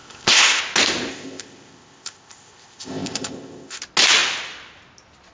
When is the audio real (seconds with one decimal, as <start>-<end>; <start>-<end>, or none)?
0.6-1.1; 3.8-5.3